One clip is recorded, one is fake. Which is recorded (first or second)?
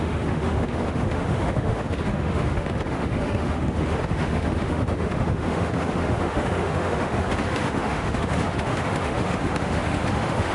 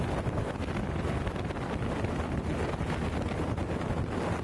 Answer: second